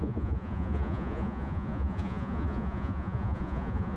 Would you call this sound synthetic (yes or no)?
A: yes